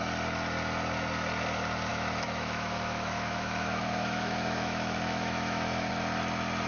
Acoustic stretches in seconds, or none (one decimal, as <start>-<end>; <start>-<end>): 0.0-1.9; 5.9-6.7